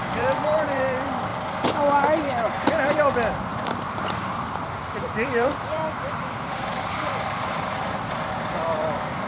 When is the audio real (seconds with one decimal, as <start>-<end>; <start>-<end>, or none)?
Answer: 1.3-2.2